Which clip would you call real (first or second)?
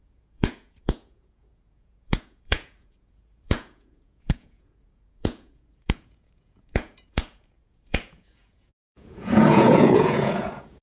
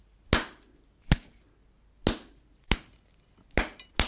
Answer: second